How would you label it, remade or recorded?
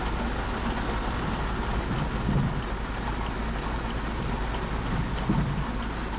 recorded